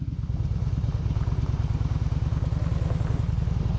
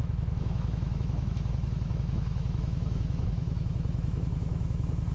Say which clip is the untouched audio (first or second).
first